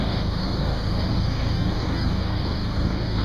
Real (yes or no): no